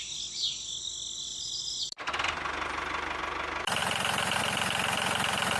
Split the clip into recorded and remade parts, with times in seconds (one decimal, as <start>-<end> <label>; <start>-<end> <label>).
0.0-5.6 recorded